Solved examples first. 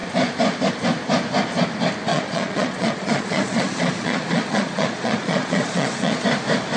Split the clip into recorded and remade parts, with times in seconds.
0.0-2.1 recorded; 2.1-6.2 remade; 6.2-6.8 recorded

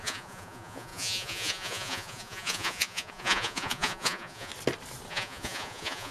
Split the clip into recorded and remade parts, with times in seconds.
0.0-4.5 remade; 4.5-5.1 recorded; 5.1-6.1 remade

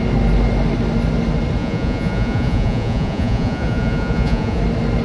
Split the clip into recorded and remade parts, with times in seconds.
0.0-1.6 recorded; 1.6-4.6 remade; 4.6-5.0 recorded

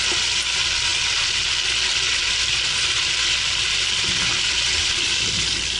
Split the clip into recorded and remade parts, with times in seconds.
0.0-5.8 remade